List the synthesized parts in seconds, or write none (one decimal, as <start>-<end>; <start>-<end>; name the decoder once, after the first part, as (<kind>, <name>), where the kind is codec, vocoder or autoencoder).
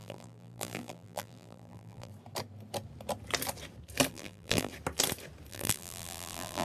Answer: 0.0-2.1 (vocoder, BigVGAN v2); 4.1-4.7; 5.5-6.6